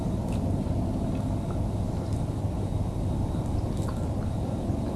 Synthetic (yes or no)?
no